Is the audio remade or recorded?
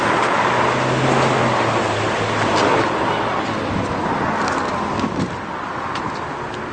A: recorded